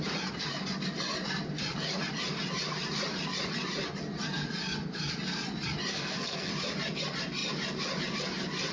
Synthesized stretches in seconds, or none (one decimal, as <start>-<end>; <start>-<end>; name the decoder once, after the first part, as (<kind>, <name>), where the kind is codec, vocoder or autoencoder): 5.9-6.5 (codec, SNAC)